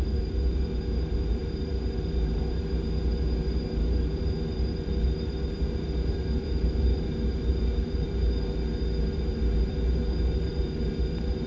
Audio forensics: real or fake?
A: fake